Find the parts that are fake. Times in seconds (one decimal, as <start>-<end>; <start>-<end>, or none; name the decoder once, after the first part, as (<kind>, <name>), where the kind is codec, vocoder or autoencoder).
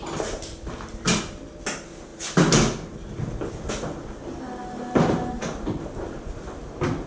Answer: none